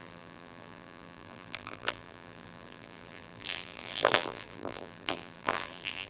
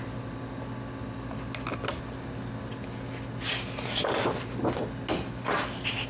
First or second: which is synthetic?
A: first